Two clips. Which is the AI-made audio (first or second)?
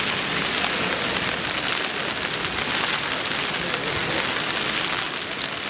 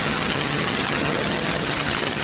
second